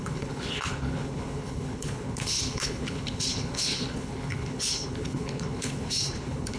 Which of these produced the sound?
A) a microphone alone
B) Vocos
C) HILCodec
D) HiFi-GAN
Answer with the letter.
C